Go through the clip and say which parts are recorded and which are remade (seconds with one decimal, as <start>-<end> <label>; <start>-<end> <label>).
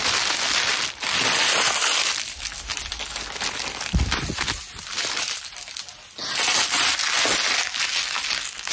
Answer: 0.0-8.7 recorded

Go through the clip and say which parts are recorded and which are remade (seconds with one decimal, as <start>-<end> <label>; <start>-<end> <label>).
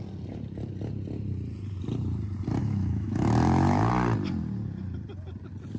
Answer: 0.0-2.6 recorded; 2.6-3.9 remade; 3.9-5.8 recorded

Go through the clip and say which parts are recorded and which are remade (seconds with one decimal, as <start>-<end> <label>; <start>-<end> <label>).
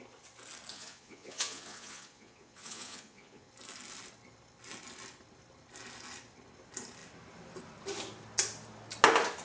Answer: 0.0-0.7 recorded; 0.7-3.5 remade; 3.5-9.4 recorded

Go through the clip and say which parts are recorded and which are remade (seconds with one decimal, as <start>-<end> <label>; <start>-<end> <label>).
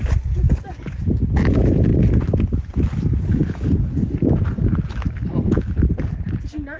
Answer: 0.0-6.8 recorded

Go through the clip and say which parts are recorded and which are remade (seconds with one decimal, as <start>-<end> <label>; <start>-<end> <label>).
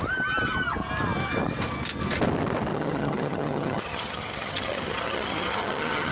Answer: 0.0-2.7 recorded; 2.7-6.1 remade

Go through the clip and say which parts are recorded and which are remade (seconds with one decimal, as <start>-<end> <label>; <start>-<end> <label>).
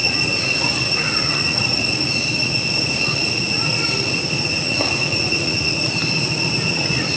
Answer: 0.0-6.0 remade; 6.0-6.7 recorded; 6.7-7.2 remade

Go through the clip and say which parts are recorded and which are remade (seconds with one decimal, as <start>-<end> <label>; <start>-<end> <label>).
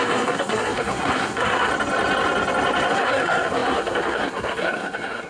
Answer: 0.0-1.7 remade; 1.7-2.9 recorded; 2.9-5.3 remade